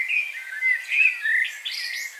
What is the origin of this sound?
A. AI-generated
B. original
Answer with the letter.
B